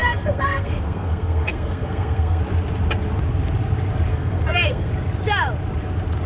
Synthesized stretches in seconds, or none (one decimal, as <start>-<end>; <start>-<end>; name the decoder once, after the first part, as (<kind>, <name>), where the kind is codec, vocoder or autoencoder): 0.0-2.4 (codec, SNAC); 4.1-4.9